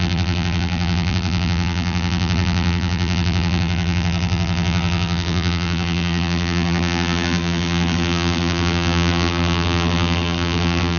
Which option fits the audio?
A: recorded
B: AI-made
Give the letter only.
B